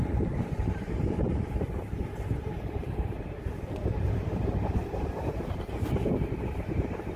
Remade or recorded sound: remade